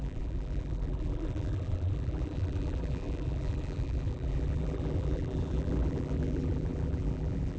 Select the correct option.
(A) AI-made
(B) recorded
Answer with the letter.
A